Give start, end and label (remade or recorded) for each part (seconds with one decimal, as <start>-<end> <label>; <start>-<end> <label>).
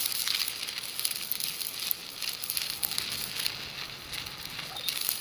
0.0-5.2 recorded